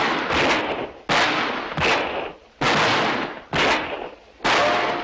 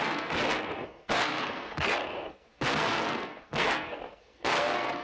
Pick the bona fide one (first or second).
first